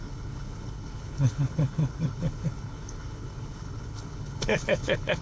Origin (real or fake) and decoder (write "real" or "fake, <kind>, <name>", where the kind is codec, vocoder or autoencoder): fake, codec, HILCodec